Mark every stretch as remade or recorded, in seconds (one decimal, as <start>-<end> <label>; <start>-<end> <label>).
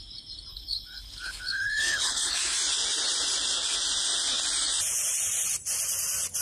0.0-0.5 recorded; 0.5-2.4 remade; 2.4-6.4 recorded